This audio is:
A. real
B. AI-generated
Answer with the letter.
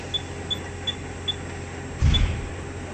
A